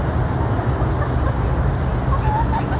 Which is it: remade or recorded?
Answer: recorded